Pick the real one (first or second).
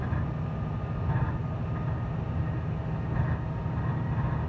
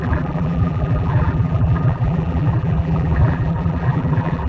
first